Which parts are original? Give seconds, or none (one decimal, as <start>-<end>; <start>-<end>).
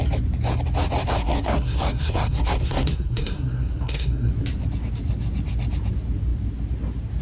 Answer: 0.0-1.2; 4.3-7.2